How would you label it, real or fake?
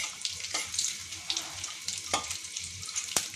fake